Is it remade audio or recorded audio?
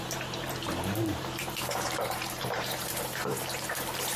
remade